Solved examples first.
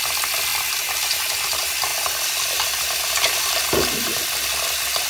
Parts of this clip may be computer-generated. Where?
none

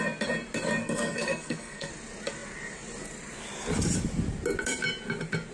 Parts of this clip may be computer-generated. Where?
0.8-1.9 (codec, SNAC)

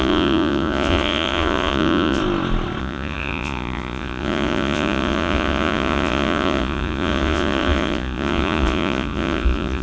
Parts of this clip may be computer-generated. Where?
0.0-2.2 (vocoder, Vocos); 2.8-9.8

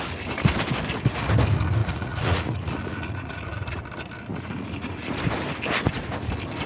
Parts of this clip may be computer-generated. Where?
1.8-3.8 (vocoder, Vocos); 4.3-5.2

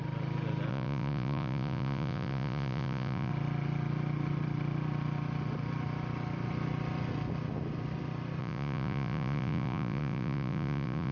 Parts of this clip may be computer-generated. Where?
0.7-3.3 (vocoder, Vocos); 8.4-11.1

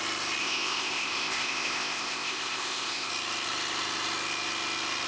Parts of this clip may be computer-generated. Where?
0.4-3.1 (codec, ZipCodec)

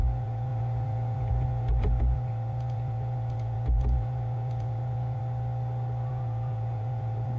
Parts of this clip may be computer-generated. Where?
0.0-5.2 (vocoder, Vocos); 6.1-7.4